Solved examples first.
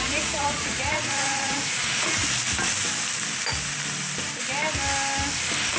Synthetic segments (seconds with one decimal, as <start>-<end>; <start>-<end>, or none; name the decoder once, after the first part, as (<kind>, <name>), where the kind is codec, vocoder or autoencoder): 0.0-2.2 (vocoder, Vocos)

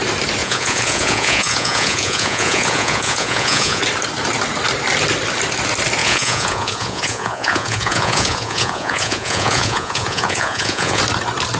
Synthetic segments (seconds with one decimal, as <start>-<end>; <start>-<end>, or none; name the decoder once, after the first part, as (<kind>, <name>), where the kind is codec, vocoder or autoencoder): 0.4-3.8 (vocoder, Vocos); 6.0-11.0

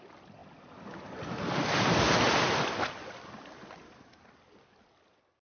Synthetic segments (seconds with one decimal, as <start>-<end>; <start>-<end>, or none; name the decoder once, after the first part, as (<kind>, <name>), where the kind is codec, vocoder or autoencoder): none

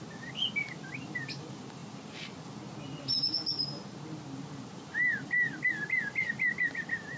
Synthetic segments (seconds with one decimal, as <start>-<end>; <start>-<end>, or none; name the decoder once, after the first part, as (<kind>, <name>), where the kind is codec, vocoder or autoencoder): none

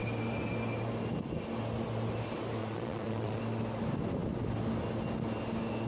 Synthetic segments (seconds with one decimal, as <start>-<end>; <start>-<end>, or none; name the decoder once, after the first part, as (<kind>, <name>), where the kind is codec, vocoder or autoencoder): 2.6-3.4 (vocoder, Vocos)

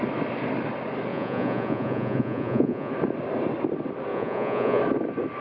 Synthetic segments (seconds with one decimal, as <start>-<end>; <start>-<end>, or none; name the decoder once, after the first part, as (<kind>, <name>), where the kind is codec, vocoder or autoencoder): 1.1-2.9 (vocoder, Vocos); 4.1-4.8